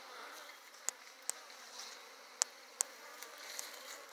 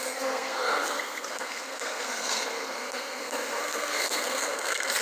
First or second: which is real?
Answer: first